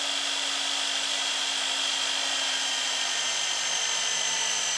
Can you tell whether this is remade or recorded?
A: recorded